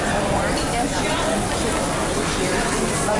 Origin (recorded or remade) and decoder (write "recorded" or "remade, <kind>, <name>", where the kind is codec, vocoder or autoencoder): recorded